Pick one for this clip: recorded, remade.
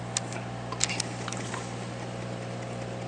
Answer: recorded